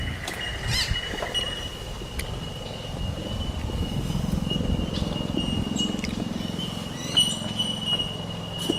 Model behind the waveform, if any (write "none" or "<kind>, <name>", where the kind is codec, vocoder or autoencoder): none